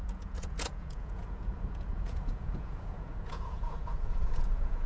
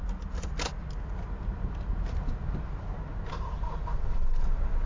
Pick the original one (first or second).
second